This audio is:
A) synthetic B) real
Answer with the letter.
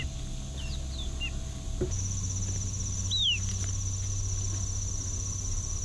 B